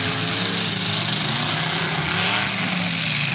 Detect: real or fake real